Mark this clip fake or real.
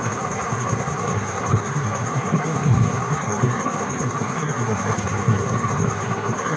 fake